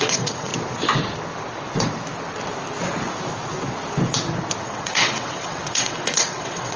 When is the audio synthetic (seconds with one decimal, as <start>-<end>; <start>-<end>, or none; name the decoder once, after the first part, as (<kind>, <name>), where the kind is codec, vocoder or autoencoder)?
0.0-0.5 (vocoder, WaveNeXt); 4.6-6.8